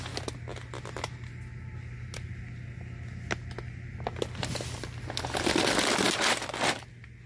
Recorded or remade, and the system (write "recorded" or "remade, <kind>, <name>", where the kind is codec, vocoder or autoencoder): recorded